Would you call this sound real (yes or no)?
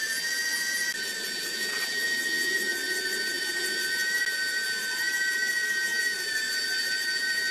yes